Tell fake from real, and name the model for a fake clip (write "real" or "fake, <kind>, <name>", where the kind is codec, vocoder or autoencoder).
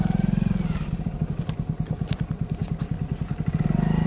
real